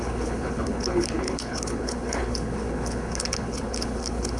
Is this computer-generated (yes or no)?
yes